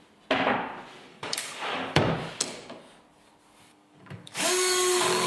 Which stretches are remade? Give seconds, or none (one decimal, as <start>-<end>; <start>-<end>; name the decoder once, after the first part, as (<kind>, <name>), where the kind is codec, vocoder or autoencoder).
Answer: 1.1-2.1 (codec, DAC); 3.7-5.3